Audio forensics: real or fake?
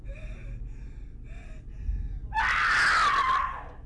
real